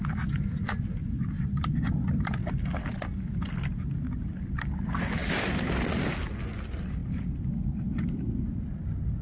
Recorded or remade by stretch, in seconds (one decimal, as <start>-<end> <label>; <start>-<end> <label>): 0.0-9.2 recorded